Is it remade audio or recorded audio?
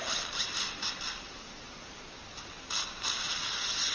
recorded